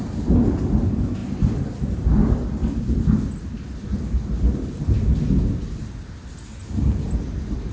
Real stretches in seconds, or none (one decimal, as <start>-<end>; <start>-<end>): 0.0-7.7